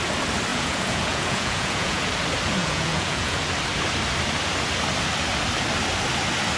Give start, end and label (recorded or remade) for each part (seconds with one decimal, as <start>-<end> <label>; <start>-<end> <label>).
0.0-0.5 recorded; 0.5-2.1 remade; 2.1-2.6 recorded; 2.6-3.4 remade; 3.4-6.6 recorded